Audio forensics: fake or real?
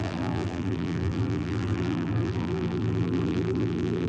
fake